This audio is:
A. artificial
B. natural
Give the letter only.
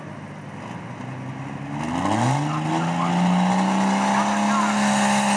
B